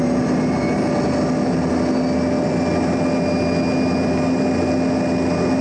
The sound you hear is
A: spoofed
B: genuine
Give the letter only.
B